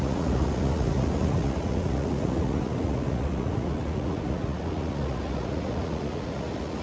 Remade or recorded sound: remade